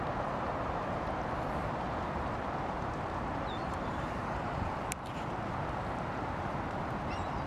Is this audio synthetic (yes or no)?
yes